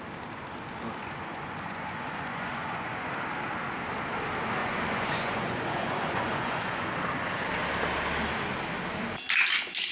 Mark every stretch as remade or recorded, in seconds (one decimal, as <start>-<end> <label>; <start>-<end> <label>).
0.0-1.0 recorded; 1.0-3.1 remade; 3.1-4.6 recorded; 4.6-6.9 remade; 6.9-9.9 recorded